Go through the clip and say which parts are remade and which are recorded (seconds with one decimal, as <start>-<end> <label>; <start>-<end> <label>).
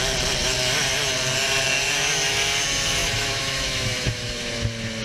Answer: 0.0-3.0 recorded; 3.0-4.4 remade; 4.4-5.0 recorded